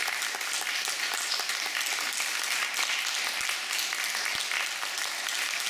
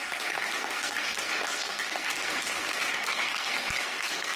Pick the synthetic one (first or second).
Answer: second